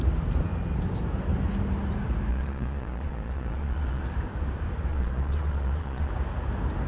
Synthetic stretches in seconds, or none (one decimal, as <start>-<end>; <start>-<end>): 2.3-4.0; 4.9-6.1